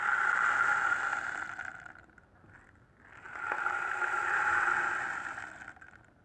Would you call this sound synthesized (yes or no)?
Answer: no